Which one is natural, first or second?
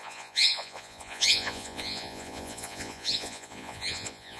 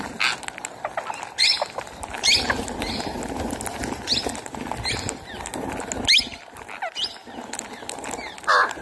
second